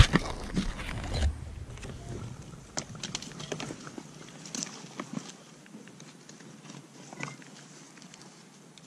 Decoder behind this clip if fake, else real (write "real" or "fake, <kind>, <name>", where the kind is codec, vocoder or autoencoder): real